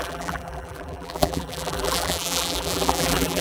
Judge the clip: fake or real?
fake